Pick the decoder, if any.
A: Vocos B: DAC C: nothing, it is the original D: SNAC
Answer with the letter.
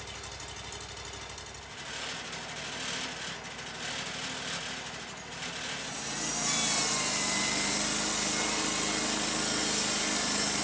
C